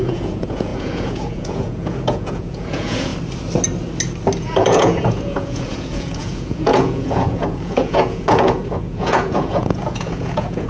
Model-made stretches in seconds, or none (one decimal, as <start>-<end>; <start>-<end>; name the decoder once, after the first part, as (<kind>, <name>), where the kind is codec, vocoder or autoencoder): 0.0-3.1 (vocoder, Vocos); 4.4-10.7